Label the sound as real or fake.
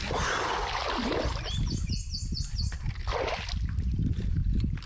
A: real